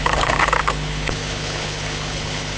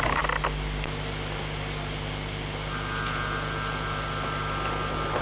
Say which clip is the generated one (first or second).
first